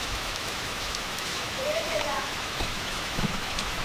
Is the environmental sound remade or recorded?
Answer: remade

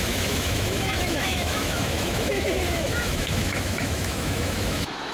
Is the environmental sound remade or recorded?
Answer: remade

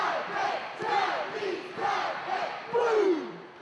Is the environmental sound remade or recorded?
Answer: recorded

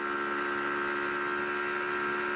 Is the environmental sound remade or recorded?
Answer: recorded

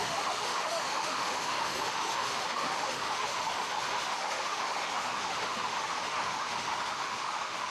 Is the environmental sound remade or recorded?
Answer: remade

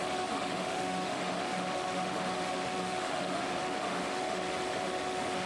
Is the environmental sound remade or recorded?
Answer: remade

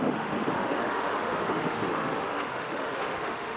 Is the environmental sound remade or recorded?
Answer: remade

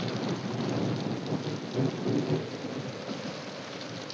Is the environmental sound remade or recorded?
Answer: recorded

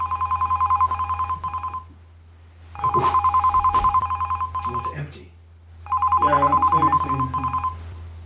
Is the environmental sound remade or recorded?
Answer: recorded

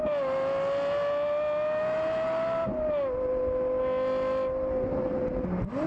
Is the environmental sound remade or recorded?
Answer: recorded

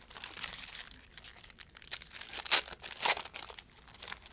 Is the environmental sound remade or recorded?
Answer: recorded